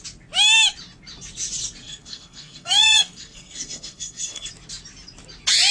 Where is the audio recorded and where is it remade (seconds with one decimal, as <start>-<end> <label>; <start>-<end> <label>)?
0.0-1.8 recorded; 1.8-4.5 remade; 4.5-5.7 recorded